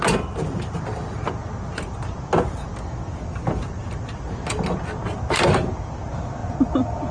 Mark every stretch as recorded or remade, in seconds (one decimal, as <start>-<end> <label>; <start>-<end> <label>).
0.0-7.1 recorded